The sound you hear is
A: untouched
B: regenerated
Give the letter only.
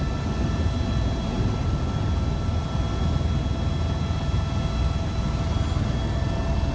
A